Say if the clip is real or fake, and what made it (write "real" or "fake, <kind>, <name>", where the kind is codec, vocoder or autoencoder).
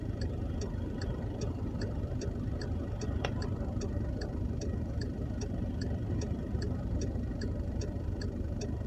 fake, vocoder, BigVGAN v2